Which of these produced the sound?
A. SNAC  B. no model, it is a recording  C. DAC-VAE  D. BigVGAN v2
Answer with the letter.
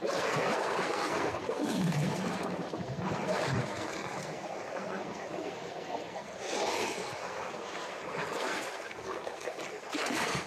A